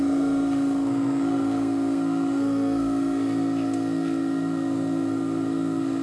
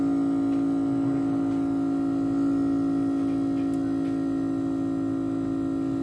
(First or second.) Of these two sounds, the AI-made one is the first